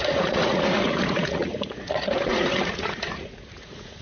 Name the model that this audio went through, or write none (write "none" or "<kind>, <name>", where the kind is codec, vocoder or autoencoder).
vocoder, Vocos